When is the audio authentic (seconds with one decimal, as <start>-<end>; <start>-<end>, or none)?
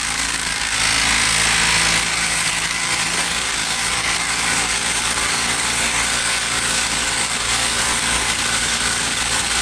0.8-2.0